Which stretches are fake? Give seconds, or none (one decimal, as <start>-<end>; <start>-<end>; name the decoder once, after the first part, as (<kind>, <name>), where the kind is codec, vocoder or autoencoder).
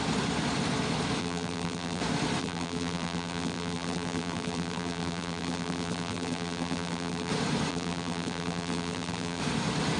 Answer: 1.2-2.0 (vocoder, BigVGAN v2); 2.4-7.3; 7.7-9.4